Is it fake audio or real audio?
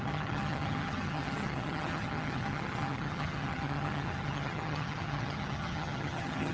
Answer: fake